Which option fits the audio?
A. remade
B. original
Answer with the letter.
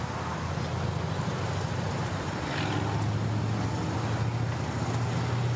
B